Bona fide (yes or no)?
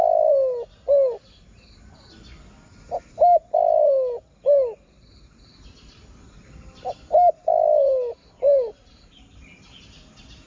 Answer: yes